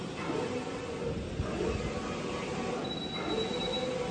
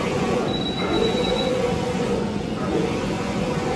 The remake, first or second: second